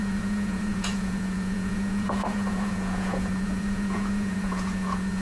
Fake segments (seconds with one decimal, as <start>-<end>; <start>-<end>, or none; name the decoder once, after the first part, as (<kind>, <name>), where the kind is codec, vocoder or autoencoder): 0.0-5.2 (vocoder, Vocos)